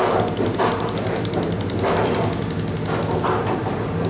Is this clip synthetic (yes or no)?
no